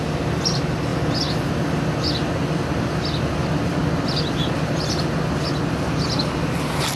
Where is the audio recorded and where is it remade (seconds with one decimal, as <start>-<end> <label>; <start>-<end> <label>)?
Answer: 0.0-7.0 recorded